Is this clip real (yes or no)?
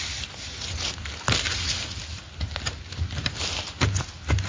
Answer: yes